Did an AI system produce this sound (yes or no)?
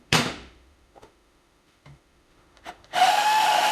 yes